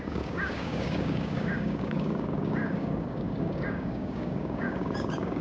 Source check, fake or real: fake